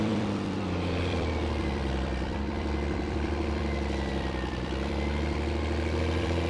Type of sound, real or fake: fake